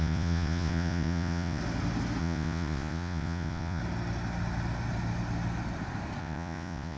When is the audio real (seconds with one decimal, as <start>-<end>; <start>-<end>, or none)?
1.6-2.2; 3.8-6.2